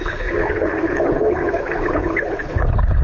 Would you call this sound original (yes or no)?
no